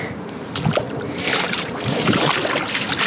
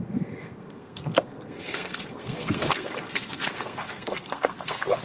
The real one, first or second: first